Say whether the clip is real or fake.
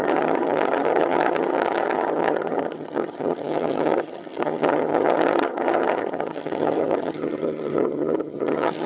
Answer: fake